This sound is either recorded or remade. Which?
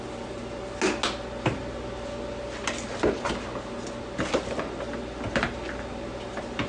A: recorded